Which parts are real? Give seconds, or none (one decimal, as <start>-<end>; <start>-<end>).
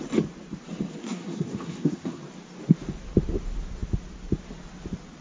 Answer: 0.0-1.0; 2.2-5.2